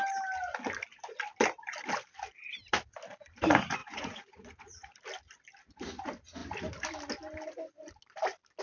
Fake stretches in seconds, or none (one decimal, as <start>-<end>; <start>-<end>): 3.8-4.9